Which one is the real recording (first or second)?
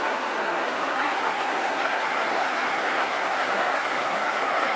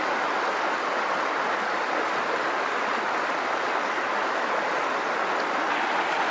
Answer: second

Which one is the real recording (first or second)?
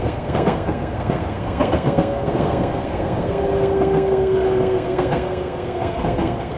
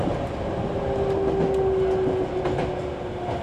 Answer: second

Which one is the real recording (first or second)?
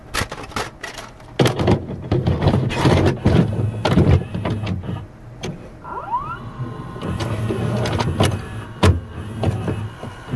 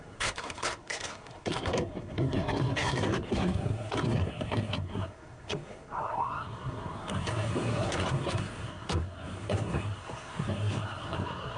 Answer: first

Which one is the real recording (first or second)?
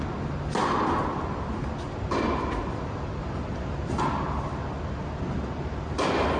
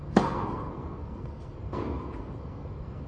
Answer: first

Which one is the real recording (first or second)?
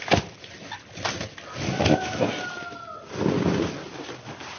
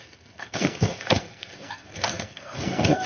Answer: first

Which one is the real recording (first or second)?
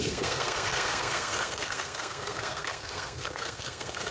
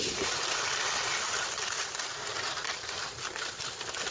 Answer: second